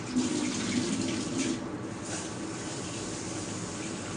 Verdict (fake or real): fake